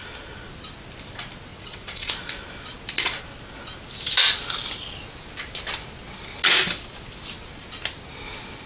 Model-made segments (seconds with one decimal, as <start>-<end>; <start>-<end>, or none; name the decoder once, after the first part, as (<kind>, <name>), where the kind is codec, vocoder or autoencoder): 1.5-2.1 (vocoder, WaveNeXt)